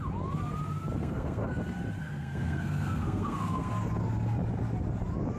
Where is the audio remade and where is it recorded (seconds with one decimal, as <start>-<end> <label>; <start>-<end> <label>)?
0.0-1.0 recorded; 1.0-1.6 remade; 1.6-2.0 recorded; 2.0-3.7 remade; 3.7-5.4 recorded